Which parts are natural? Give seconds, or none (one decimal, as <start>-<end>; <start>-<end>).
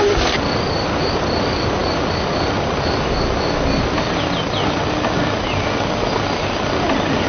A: 0.0-7.3